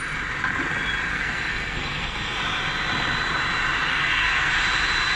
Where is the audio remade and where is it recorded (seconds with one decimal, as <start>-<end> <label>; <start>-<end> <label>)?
0.0-1.1 recorded; 1.1-2.4 remade; 2.4-3.9 recorded; 3.9-4.5 remade; 4.5-5.2 recorded